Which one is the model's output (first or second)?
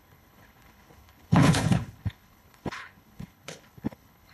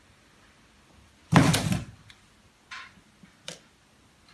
first